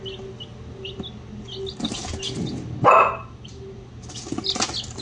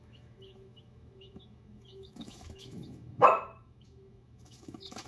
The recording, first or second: first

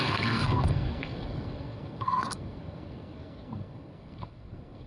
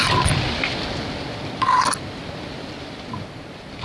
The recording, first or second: second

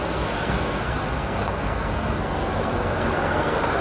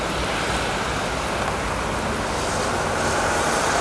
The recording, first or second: second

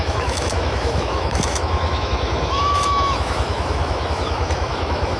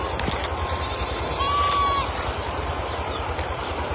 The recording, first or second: second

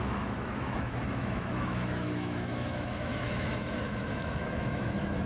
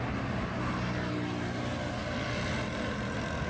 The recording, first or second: second